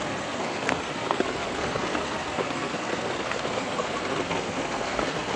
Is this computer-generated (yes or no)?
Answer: yes